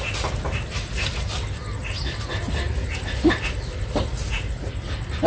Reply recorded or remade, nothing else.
recorded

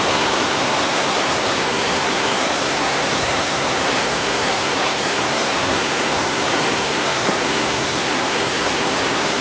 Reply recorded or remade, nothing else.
remade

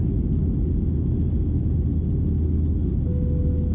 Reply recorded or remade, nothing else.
recorded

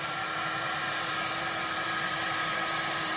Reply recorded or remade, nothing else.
remade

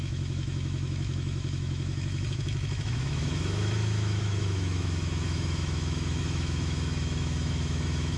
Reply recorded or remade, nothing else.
remade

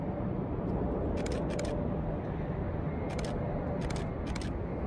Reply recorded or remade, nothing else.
recorded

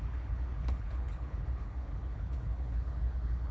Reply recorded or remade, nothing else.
remade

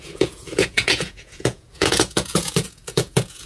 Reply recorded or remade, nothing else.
remade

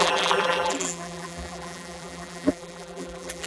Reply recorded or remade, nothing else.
remade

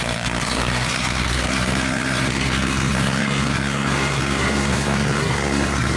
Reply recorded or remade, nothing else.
remade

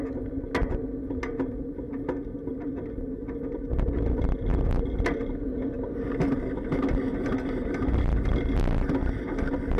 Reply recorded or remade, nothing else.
recorded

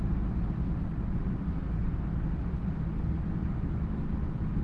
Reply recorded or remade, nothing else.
recorded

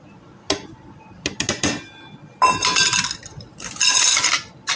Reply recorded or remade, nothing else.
recorded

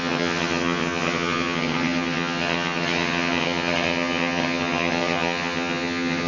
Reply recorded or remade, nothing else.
remade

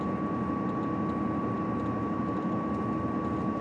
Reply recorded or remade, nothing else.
recorded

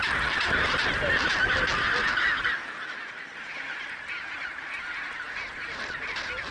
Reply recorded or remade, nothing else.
recorded